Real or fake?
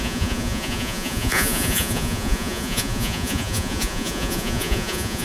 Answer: fake